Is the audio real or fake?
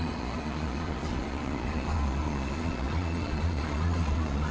fake